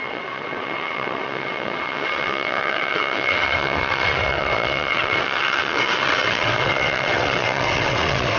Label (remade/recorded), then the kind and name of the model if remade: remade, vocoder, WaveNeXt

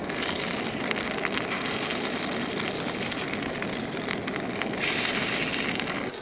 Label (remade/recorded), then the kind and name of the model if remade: recorded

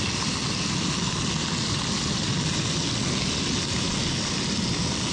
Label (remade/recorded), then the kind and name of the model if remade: recorded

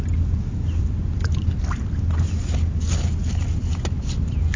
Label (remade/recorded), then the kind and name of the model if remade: recorded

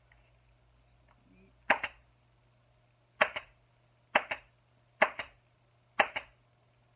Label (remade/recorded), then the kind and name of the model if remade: recorded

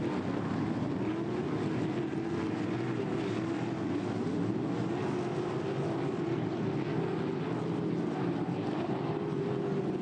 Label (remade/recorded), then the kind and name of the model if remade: recorded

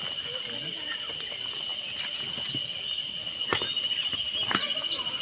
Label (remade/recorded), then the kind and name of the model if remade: recorded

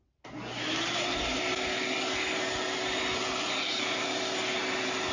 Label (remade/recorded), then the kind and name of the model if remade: recorded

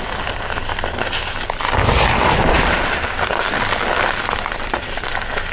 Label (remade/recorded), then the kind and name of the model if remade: recorded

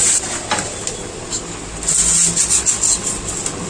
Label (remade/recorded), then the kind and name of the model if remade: recorded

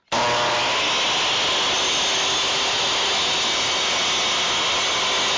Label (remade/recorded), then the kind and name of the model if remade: recorded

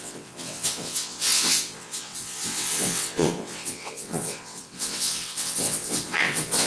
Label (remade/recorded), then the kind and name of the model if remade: remade, vocoder, WaveNeXt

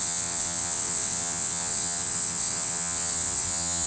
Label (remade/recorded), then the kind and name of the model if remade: remade, vocoder, WaveNeXt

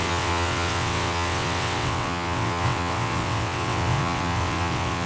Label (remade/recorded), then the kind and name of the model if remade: remade, vocoder, WaveNeXt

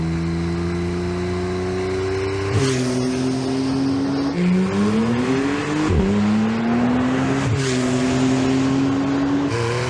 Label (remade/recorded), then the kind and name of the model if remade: recorded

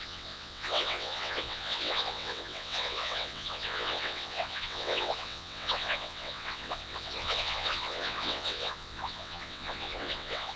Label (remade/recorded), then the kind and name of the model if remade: remade, vocoder, WaveNeXt